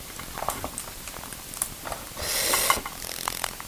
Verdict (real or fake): real